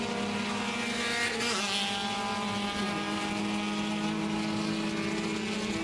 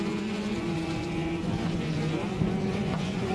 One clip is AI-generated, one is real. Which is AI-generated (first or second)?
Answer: second